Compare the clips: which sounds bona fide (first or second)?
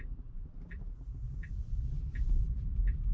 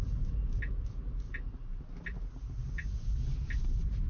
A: second